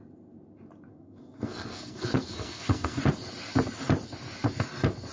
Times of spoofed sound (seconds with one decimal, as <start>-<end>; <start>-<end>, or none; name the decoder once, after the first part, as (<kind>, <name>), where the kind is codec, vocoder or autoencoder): 0.9-3.0 (codec, SNAC)